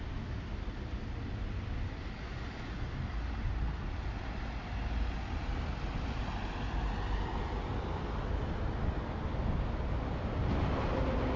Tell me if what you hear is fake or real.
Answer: real